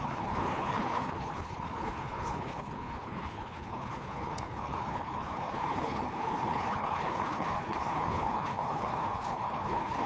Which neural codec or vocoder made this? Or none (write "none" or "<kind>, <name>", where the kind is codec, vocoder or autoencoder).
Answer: codec, HILCodec